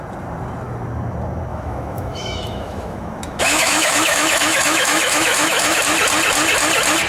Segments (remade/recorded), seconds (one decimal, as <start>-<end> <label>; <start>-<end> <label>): 0.0-1.5 recorded; 1.5-5.8 remade; 5.8-7.1 recorded